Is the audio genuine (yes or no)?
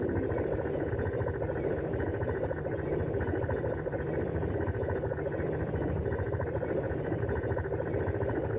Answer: no